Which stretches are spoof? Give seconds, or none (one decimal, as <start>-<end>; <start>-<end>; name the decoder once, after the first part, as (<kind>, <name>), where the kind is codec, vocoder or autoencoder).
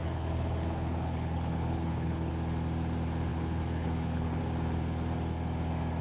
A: 0.0-2.3 (codec, HILCodec); 3.3-4.4